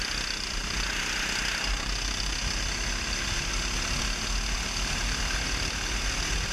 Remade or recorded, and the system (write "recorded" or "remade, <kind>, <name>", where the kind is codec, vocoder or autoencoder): recorded